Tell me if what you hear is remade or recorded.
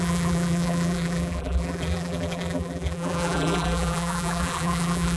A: remade